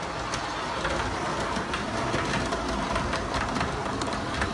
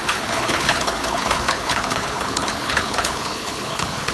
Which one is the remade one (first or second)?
second